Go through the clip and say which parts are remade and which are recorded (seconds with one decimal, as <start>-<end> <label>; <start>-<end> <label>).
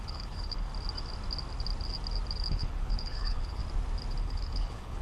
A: 0.0-0.7 remade; 0.7-2.4 recorded; 2.4-3.6 remade; 3.6-4.2 recorded; 4.2-5.0 remade